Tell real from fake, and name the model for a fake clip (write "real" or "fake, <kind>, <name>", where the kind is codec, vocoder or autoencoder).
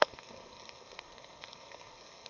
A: fake, codec, SNAC